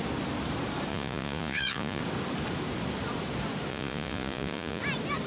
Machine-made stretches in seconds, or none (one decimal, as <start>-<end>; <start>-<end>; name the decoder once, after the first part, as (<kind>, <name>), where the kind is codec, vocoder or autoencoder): 0.9-2.0 (vocoder, Vocos); 3.7-4.8